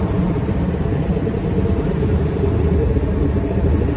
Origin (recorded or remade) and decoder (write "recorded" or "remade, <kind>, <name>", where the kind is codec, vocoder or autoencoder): recorded